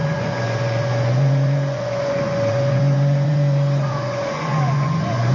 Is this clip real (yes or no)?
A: no